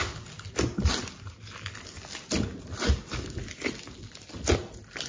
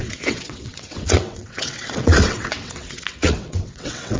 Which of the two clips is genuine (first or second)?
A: first